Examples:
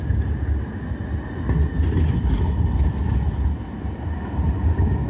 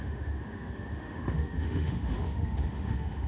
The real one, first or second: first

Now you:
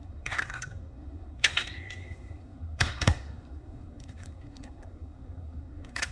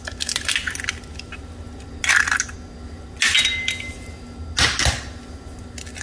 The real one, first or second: second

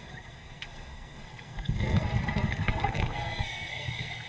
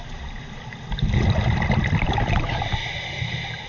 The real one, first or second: second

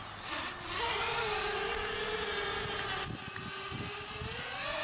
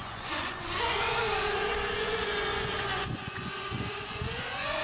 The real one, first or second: first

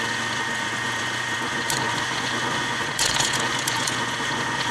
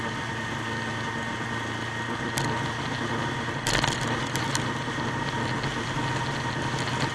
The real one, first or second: second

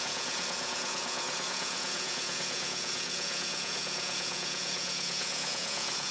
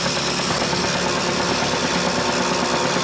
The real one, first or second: second